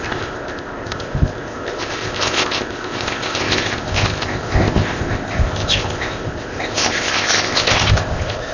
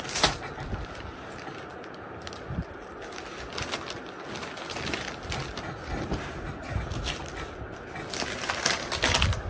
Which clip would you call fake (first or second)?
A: first